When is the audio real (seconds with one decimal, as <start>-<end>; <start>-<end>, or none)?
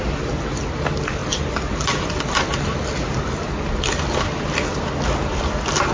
0.0-5.9